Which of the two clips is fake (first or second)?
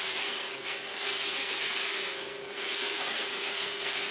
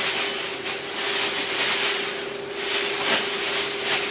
first